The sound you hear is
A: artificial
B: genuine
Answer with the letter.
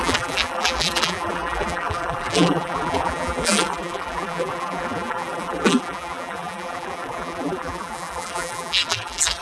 A